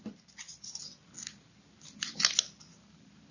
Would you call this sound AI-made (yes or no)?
no